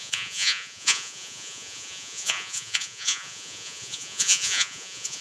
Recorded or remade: remade